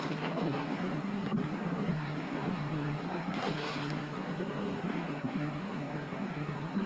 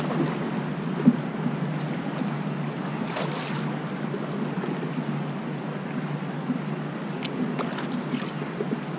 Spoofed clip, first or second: first